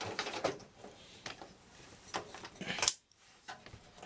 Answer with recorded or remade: remade